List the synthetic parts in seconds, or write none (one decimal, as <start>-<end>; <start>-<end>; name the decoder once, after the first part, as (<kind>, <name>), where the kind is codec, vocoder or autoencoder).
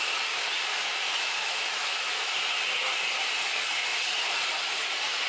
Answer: 0.7-2.3 (autoencoder, DAC-VAE)